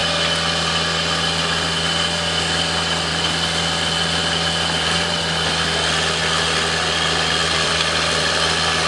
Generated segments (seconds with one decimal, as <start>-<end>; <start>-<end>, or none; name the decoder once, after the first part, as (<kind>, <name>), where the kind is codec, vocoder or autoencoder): 3.1-4.2 (vocoder, BigVGAN v2); 7.4-8.2